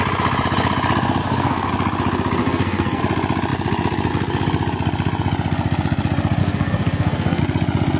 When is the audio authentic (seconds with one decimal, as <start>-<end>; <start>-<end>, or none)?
0.0-1.2; 1.7-2.4; 3.0-6.4; 7.4-8.0